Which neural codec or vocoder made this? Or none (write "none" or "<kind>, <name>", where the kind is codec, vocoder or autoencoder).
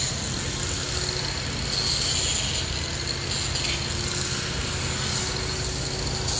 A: none